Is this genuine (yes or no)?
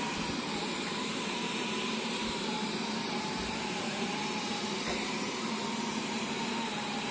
no